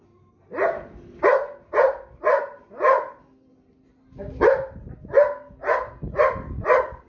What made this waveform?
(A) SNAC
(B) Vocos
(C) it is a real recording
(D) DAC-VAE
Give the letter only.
C